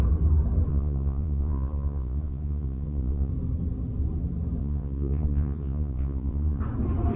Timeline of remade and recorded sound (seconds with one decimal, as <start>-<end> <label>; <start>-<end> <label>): 0.0-0.7 recorded; 0.7-3.3 remade; 3.3-4.6 recorded; 4.6-6.6 remade; 6.6-7.2 recorded